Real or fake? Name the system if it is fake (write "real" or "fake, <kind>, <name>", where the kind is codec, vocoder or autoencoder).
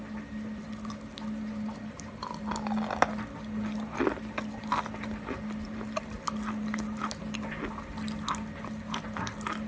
real